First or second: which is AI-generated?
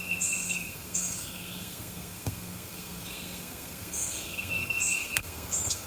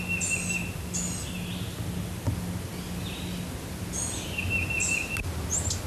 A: first